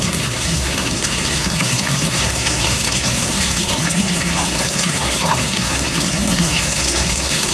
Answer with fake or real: fake